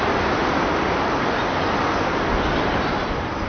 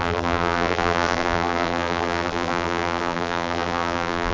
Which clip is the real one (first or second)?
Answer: first